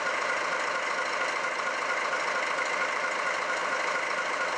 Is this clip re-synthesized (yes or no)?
no